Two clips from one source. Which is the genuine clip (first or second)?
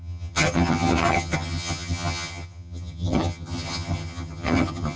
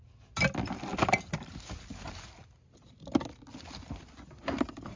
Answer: second